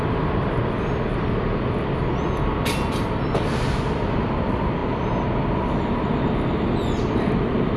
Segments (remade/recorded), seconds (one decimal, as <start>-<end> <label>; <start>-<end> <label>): 0.0-7.8 recorded